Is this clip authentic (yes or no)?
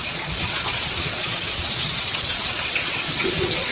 no